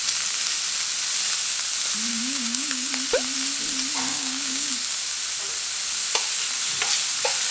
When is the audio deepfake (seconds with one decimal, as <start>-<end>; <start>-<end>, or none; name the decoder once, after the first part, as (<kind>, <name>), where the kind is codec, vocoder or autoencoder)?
2.1-2.9 (codec, DAC); 4.1-4.7